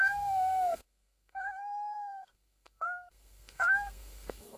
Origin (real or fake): fake